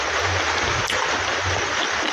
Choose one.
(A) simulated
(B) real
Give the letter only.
B